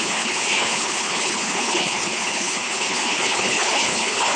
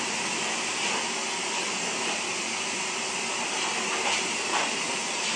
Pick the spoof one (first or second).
first